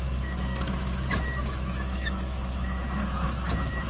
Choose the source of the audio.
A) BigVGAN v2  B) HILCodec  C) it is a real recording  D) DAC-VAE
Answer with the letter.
D